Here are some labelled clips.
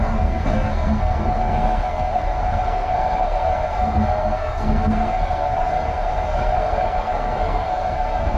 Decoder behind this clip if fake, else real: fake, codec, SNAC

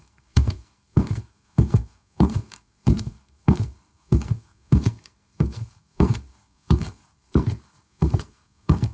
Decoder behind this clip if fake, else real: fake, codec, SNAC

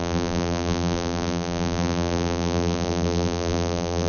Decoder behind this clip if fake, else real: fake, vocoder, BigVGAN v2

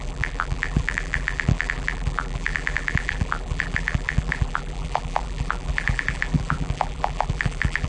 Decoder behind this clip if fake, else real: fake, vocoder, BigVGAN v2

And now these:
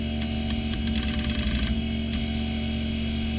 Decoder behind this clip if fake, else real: real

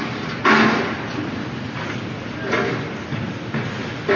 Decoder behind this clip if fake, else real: real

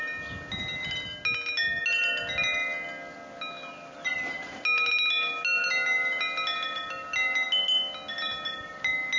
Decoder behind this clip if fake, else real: real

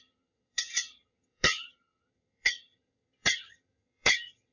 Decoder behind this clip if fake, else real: fake, vocoder, HiFi-GAN